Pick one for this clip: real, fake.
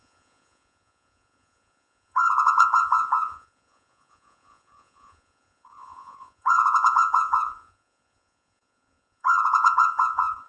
fake